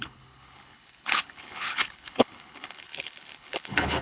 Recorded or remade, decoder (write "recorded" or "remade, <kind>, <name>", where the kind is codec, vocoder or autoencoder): remade, codec, HILCodec